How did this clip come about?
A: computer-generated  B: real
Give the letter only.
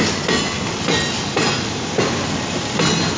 B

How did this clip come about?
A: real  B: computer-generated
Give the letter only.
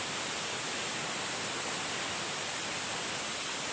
A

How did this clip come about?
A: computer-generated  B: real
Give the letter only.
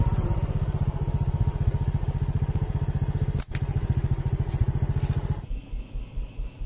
B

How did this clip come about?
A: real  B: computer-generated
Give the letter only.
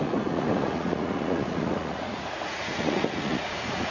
B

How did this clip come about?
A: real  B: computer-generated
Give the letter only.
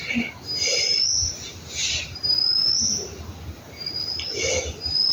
A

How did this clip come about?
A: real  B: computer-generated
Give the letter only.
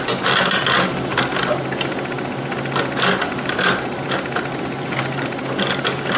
A